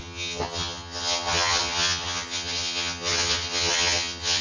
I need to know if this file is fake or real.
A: fake